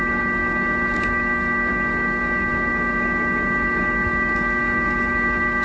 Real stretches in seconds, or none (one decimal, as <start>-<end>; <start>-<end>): 0.0-5.6